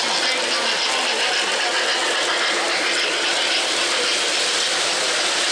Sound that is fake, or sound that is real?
real